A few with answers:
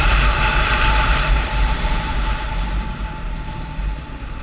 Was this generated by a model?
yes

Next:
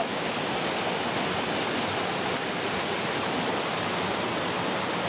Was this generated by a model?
no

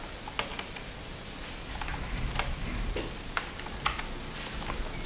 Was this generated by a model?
no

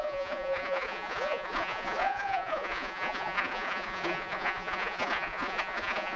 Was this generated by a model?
yes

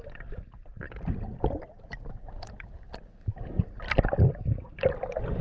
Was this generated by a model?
no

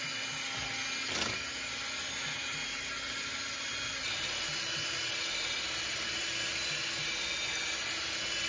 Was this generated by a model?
no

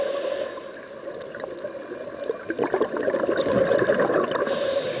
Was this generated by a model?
no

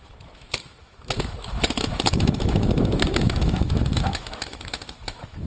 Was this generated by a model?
yes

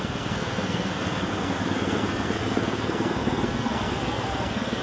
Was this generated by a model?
yes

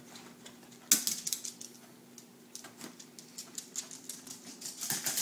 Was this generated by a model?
no